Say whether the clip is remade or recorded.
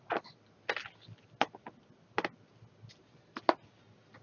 recorded